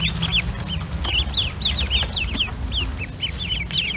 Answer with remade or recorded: recorded